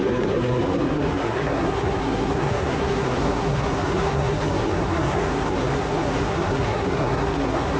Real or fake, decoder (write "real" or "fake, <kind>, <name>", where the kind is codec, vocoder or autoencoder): fake, codec, SNAC